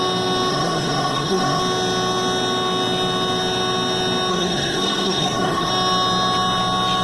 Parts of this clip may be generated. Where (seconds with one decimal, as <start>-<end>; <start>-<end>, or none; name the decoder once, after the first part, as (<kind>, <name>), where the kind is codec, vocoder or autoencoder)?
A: 0.5-1.6 (codec, SNAC); 4.3-5.7